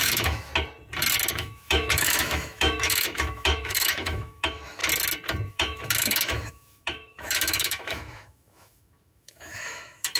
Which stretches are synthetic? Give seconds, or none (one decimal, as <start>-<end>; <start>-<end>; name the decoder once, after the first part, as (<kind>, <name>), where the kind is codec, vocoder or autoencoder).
0.0-0.5 (autoencoder, DAC-VAE); 1.3-4.8; 5.5-10.2